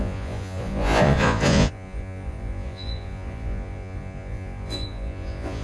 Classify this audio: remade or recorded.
remade